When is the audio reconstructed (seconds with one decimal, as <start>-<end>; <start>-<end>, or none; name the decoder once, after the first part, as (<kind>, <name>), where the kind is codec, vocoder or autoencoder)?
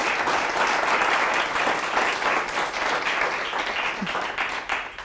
none